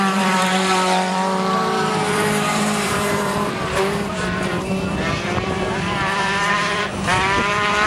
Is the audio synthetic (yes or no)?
yes